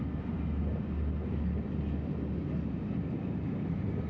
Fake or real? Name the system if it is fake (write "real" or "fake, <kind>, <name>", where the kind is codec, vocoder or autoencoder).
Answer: real